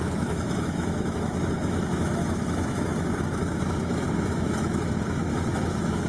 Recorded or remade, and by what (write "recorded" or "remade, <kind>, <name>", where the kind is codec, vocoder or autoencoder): remade, autoencoder, DAC-VAE